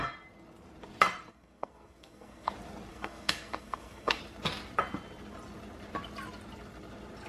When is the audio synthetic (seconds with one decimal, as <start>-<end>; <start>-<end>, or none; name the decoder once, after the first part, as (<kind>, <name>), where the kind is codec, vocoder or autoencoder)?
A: 1.3-2.5 (codec, SNAC); 2.9-4.2